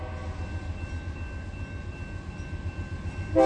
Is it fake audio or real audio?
real